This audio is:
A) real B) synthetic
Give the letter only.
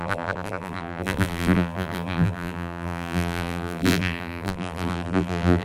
B